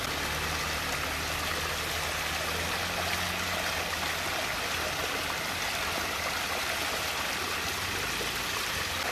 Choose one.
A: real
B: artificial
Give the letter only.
A